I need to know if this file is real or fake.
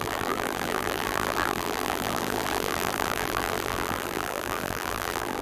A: fake